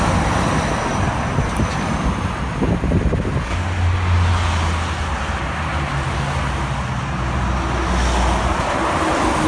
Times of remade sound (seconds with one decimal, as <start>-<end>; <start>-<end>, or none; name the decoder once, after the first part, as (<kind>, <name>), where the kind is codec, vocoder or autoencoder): none